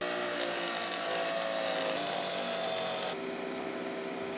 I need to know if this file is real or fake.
real